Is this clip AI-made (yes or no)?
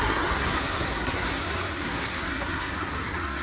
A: yes